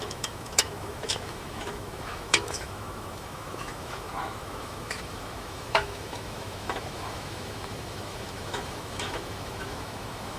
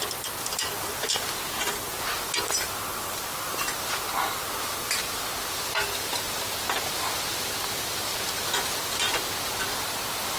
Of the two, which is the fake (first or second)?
first